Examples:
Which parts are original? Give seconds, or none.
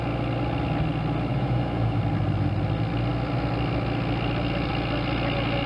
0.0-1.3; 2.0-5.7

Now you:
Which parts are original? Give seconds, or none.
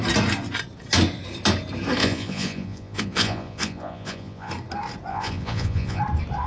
0.0-2.0; 4.5-5.1; 6.0-6.5